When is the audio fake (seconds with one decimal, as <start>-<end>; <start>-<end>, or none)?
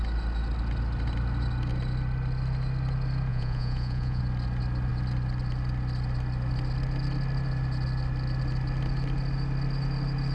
3.3-4.2